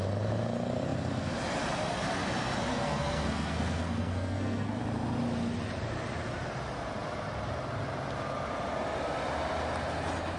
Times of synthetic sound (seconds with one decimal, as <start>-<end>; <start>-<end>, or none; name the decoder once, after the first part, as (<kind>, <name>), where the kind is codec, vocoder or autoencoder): 2.7-4.8 (codec, SNAC)